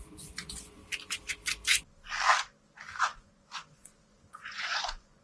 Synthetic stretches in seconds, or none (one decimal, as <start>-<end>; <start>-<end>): 0.0-0.8; 3.0-5.2